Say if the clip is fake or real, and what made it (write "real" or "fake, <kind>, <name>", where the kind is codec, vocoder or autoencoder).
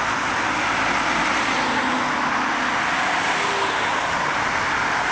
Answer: real